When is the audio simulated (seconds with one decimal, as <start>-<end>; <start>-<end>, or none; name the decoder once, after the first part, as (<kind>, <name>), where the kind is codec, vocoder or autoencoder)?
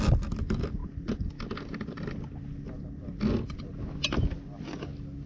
none